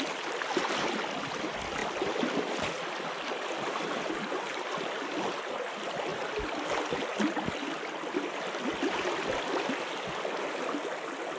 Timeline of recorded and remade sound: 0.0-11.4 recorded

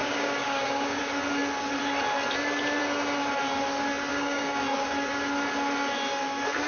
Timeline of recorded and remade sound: 0.0-1.0 remade; 1.0-4.1 recorded; 4.1-4.6 remade; 4.6-6.7 recorded

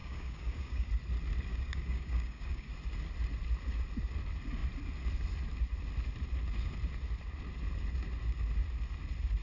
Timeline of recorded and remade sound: 0.0-0.9 remade; 0.9-1.5 recorded; 1.5-2.7 remade; 2.7-9.4 recorded

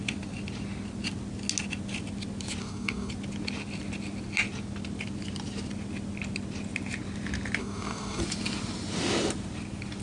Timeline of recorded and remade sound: 0.0-2.6 recorded; 2.6-3.1 remade; 3.1-7.6 recorded; 7.6-8.2 remade; 8.2-10.0 recorded

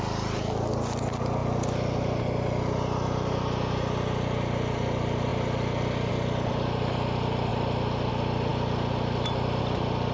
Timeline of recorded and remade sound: 0.0-10.1 recorded

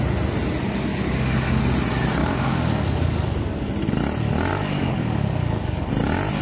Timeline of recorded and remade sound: 0.0-0.9 recorded; 0.9-1.6 remade; 1.6-2.2 recorded; 2.2-3.7 remade; 3.7-4.5 recorded; 4.5-5.9 remade; 5.9-6.4 recorded

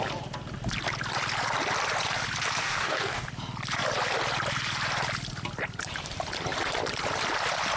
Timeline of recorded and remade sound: 0.0-2.6 recorded; 2.6-3.3 remade; 3.3-7.8 recorded

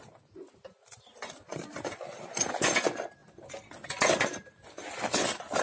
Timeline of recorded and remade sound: 0.0-5.6 recorded